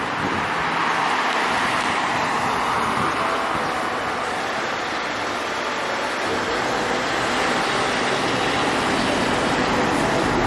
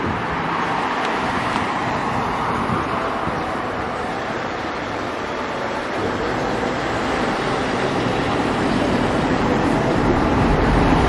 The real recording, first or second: first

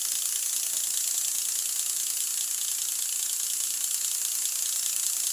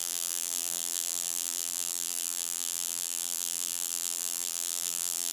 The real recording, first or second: first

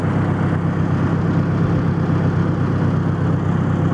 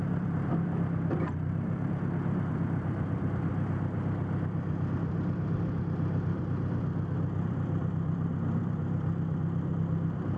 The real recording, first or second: first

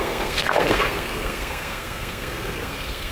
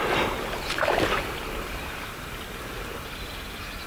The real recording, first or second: second